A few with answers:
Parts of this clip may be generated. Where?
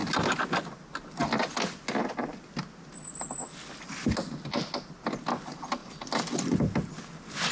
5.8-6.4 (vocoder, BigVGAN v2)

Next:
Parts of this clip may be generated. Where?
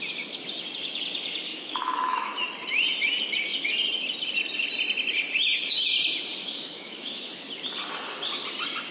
1.5-2.5 (autoencoder, DAC-VAE); 6.4-7.4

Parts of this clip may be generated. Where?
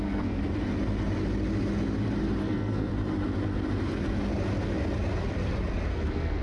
0.0-0.4 (codec, SNAC); 2.4-2.9; 5.9-6.4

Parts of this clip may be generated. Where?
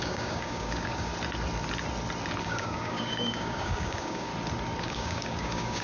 0.0-1.1 (codec, DAC); 2.4-4.3; 4.8-5.8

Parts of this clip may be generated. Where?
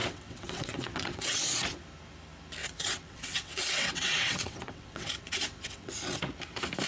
0.0-1.4 (vocoder, WaveNeXt); 2.6-5.9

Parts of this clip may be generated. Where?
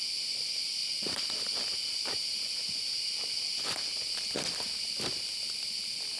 0.8-1.7 (vocoder, BigVGAN v2)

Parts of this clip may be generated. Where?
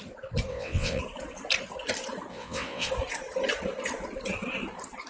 0.5-1.0 (vocoder, WaveNeXt); 2.3-2.9